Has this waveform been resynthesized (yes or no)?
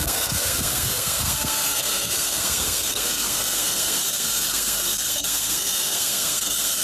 yes